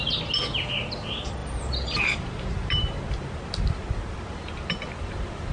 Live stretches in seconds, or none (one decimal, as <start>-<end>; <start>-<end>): 0.0-1.4; 2.9-5.5